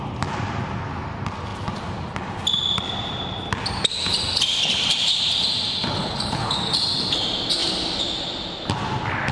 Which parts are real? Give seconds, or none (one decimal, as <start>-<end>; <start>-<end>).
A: 0.0-6.0; 6.6-9.3